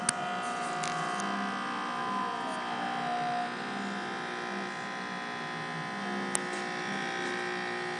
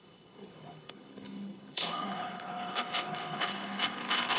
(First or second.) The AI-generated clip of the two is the second